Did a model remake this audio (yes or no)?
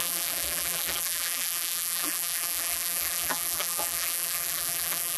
yes